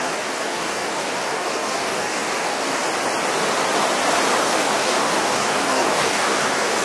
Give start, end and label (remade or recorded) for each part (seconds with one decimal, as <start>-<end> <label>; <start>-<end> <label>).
0.0-2.8 remade; 2.8-4.4 recorded; 4.4-6.8 remade